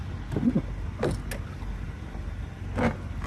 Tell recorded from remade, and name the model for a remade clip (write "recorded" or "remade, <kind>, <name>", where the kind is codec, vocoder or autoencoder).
recorded